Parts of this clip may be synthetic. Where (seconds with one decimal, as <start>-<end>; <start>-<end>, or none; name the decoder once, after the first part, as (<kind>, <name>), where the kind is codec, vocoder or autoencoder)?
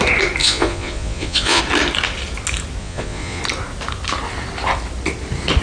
0.4-1.6 (vocoder, Vocos); 2.8-3.4